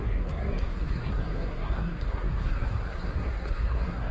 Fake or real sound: fake